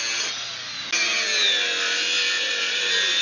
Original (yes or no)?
yes